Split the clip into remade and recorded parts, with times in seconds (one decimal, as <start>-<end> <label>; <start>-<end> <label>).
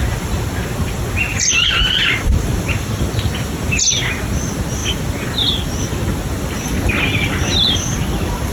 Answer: 0.0-1.3 recorded; 1.3-2.9 remade; 2.9-8.5 recorded